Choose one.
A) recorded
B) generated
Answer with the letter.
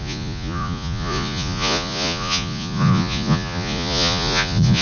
B